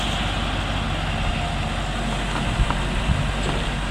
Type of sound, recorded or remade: recorded